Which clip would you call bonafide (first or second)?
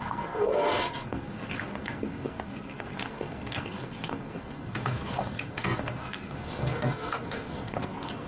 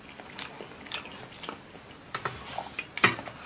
second